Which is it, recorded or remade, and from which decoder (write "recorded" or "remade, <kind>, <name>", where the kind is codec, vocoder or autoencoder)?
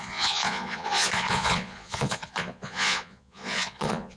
remade, vocoder, Vocos